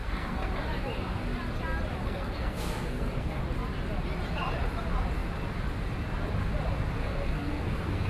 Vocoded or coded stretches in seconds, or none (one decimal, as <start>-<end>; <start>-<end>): 0.0-0.5; 2.0-3.4; 7.0-8.1